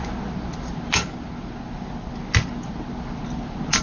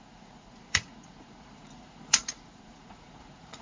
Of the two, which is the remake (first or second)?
second